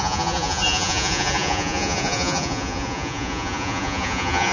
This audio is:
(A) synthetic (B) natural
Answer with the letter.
A